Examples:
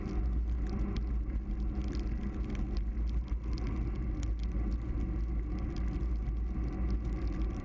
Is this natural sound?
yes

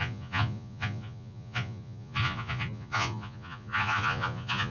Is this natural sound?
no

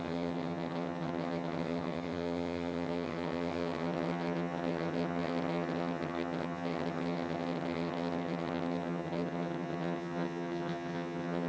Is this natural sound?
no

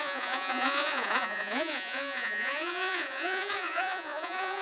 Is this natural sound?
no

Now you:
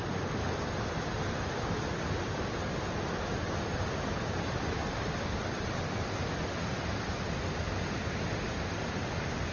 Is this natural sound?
yes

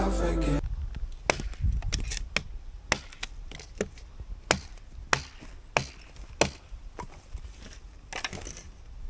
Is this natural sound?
yes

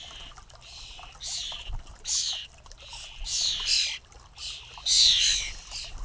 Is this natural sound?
yes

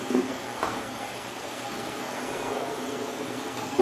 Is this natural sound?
no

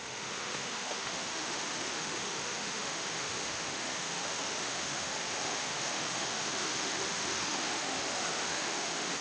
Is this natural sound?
no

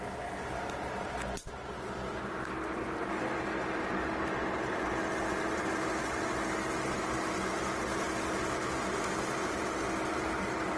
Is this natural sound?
yes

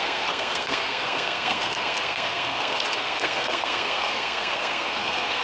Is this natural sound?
no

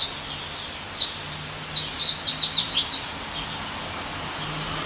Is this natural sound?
yes